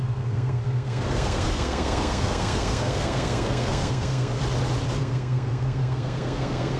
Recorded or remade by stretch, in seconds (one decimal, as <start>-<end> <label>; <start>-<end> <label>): 0.0-4.4 remade; 4.4-5.0 recorded; 5.0-6.8 remade

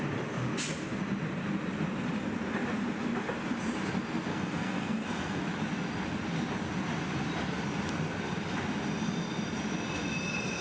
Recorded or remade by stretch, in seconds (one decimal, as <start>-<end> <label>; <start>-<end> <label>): 0.0-4.3 recorded; 4.3-5.4 remade; 5.4-10.6 recorded

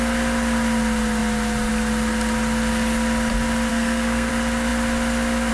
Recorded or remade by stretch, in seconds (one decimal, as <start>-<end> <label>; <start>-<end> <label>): 0.0-3.7 recorded; 3.7-4.3 remade; 4.3-5.5 recorded

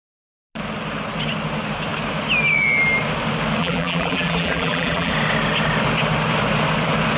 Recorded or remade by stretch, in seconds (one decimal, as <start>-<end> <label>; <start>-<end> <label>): 0.0-3.6 recorded; 3.6-5.1 remade; 5.1-7.2 recorded